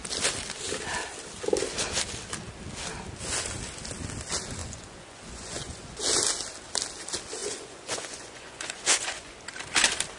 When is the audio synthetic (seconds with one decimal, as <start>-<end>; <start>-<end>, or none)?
4.6-6.0; 7.4-9.4